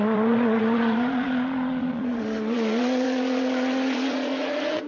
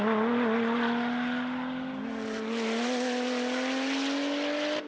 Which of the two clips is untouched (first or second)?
second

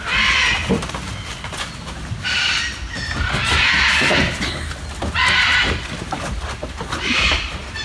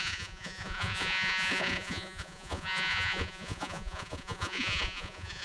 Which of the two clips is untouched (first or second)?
first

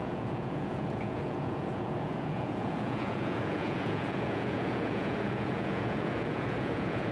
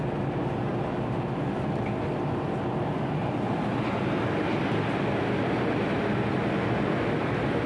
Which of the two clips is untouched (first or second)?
second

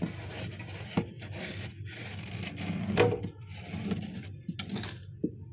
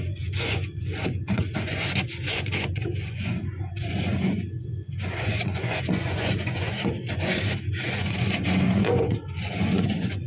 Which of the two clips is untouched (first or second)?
first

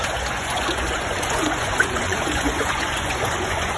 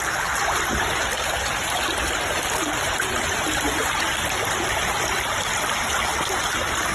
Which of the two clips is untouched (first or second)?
second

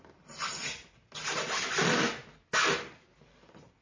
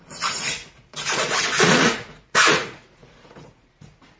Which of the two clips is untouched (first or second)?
first